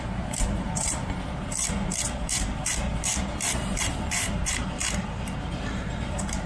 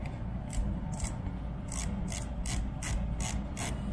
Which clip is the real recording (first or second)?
second